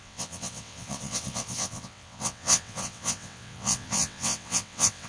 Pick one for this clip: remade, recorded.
remade